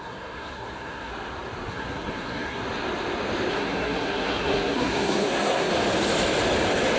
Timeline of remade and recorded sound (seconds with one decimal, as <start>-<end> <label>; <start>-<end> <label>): 0.0-1.1 remade; 1.1-1.7 recorded; 1.7-2.6 remade; 2.6-3.5 recorded; 3.5-5.7 remade; 5.7-7.0 recorded